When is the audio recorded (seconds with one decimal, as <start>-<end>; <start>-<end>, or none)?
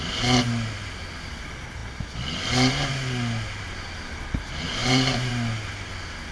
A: 0.0-4.8; 5.3-6.3